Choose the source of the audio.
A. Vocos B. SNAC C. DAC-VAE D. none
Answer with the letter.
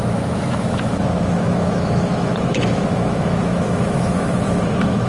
C